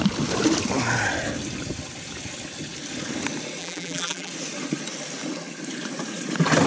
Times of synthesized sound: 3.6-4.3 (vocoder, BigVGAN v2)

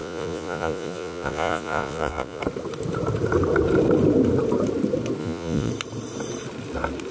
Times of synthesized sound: 0.0-2.4 (vocoder, Vocos); 5.2-5.7

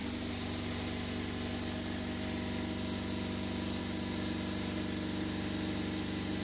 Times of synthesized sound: none

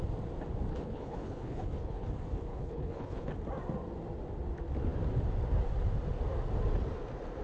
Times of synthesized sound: 0.7-2.1 (codec, HILCodec); 2.5-3.3

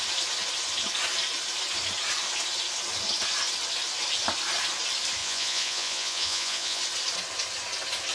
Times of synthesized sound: 5.2-6.8 (vocoder, Vocos)

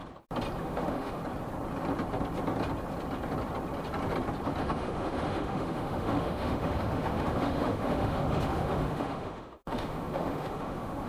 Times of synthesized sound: 0.6-1.2 (autoencoder, DAC-VAE); 4.6-11.1